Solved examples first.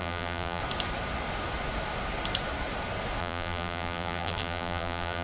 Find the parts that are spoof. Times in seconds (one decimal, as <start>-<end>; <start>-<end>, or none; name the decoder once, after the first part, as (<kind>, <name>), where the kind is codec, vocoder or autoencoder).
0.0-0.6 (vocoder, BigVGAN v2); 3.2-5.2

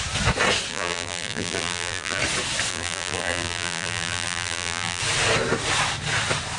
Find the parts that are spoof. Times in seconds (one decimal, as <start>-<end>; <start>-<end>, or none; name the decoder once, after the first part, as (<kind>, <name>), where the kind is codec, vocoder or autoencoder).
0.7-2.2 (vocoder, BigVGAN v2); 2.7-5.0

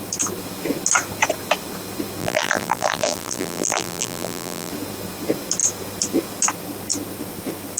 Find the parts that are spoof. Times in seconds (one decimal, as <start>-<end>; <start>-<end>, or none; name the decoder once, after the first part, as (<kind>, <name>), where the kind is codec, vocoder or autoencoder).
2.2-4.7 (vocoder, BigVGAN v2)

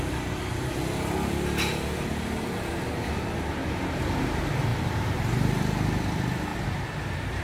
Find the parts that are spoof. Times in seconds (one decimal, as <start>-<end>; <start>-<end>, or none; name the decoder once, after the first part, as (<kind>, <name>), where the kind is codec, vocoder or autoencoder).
4.7-5.6 (vocoder, BigVGAN v2); 6.5-7.4

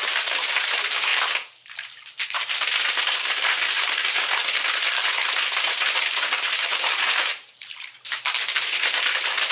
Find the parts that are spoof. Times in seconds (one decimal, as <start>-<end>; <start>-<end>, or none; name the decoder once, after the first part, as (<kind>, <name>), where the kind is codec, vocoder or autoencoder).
0.0-1.1 (vocoder, BigVGAN v2); 1.7-9.5

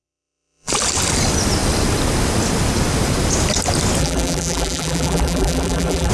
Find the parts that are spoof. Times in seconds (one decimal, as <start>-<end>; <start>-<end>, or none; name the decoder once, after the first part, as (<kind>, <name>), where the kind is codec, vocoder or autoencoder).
0.0-0.7 (vocoder, BigVGAN v2); 4.0-6.1

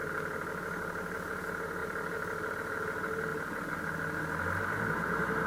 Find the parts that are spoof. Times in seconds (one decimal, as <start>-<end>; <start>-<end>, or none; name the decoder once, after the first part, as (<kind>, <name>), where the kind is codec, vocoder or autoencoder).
1.8-2.5 (vocoder, BigVGAN v2)

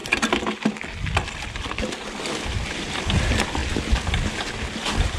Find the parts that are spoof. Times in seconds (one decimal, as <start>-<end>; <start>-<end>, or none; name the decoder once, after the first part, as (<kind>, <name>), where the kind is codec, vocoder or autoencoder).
2.5-3.6 (vocoder, BigVGAN v2); 4.5-5.2